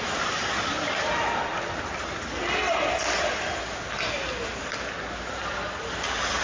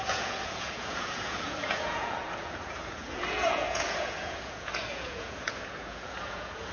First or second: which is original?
first